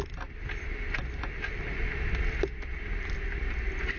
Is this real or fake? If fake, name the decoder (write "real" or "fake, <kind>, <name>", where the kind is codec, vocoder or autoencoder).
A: real